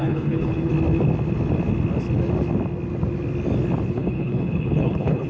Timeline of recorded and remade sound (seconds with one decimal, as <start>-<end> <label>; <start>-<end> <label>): 0.0-0.7 remade; 0.7-3.9 recorded; 3.9-5.3 remade